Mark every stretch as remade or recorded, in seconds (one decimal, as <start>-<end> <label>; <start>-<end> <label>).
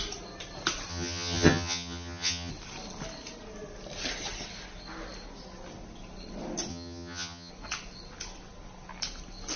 0.0-0.9 recorded; 0.9-2.5 remade; 2.5-6.7 recorded; 6.7-7.5 remade; 7.5-9.6 recorded